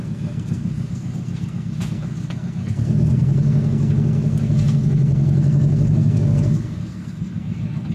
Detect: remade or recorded remade